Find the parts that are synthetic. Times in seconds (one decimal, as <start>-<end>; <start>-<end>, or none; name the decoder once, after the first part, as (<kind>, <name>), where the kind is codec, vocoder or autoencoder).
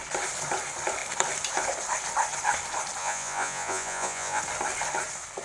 3.0-4.4 (vocoder, Vocos)